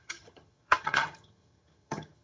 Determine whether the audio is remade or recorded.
remade